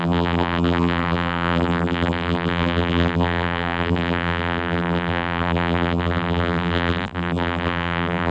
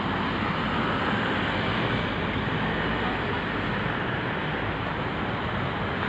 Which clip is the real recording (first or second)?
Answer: second